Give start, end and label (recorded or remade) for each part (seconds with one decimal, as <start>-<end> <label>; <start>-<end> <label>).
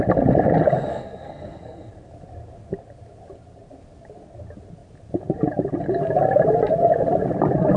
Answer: 0.0-0.9 recorded; 0.9-1.9 remade; 1.9-7.8 recorded